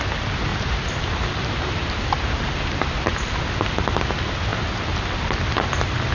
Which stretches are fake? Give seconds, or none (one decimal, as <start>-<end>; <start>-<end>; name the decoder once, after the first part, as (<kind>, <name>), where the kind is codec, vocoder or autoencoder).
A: 0.5-3.4 (vocoder, BigVGAN v2)